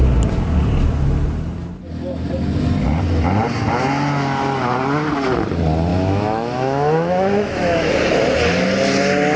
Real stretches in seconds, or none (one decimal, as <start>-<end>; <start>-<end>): 0.0-5.9; 7.9-9.4